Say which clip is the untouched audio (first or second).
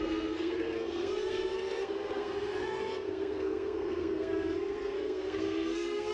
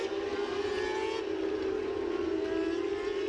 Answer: second